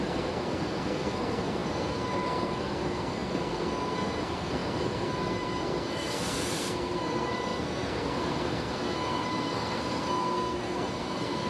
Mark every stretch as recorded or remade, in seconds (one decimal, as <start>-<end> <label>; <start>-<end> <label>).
0.0-11.5 remade